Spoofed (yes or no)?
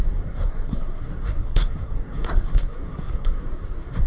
yes